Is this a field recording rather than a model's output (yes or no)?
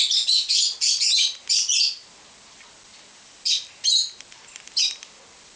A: yes